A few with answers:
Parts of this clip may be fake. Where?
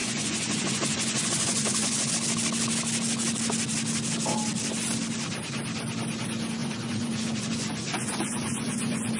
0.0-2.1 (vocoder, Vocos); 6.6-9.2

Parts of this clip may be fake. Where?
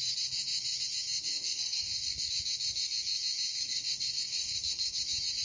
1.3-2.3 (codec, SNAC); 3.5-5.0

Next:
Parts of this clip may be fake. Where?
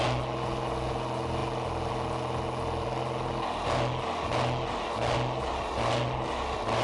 none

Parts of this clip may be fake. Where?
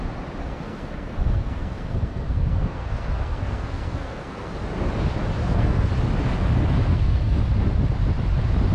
0.4-4.5 (codec, SNAC); 5.4-5.9; 6.9-7.4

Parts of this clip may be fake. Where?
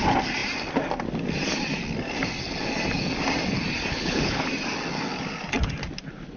3.9-4.5 (codec, HILCodec)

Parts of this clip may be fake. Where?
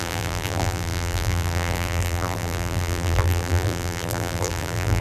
0.0-5.0 (vocoder, BigVGAN v2)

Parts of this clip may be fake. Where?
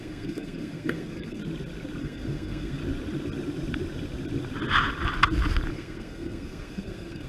0.0-1.4 (codec, SNAC); 2.0-2.8; 5.7-7.3